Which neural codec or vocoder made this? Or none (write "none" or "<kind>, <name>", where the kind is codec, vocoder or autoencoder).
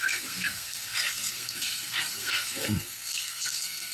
codec, SNAC